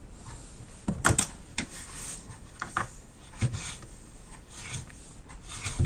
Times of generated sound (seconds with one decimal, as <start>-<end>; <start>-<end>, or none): 1.5-5.0